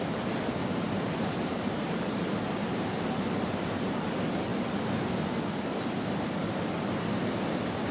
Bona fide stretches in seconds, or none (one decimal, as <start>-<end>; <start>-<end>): 0.0-0.6; 3.8-7.9